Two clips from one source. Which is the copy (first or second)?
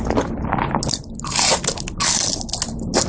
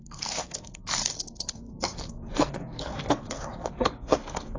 second